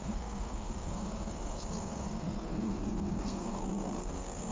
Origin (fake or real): fake